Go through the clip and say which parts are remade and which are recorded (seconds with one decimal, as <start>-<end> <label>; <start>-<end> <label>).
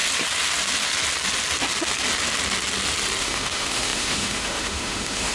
0.0-3.2 recorded; 3.2-5.3 remade